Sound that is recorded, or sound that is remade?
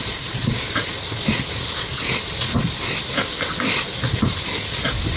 recorded